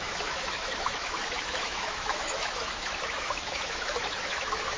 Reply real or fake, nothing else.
fake